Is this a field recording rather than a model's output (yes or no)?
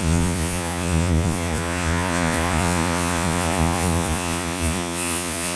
no